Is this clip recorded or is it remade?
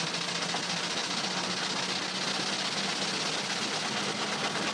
recorded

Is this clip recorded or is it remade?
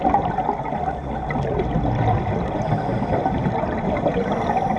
recorded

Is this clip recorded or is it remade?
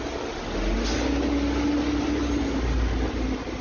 recorded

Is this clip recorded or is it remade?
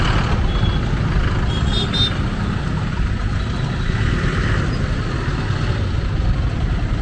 recorded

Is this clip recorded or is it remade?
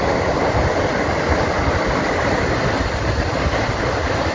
recorded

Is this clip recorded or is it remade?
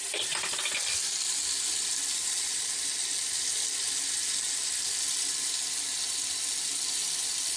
recorded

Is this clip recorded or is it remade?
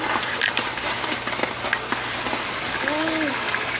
recorded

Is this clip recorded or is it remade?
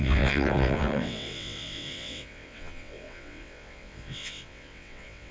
remade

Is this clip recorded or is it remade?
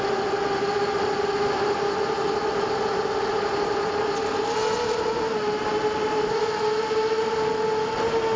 recorded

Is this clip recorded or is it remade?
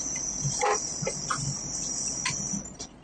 recorded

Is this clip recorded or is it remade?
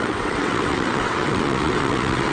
remade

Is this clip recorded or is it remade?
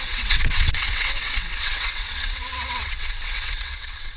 remade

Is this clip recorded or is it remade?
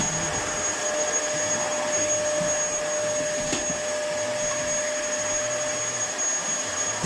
recorded